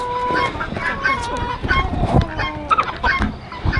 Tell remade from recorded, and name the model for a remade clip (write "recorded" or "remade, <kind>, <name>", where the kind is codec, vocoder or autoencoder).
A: recorded